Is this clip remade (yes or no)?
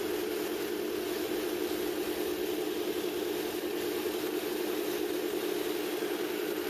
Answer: no